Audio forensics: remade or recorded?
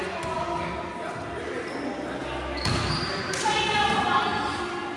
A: recorded